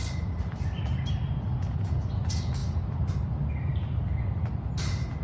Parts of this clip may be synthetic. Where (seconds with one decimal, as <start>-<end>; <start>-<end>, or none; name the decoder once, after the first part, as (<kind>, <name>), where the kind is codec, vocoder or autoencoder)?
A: 1.6-2.1 (vocoder, Vocos)